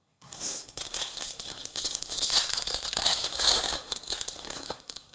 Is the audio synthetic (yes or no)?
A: yes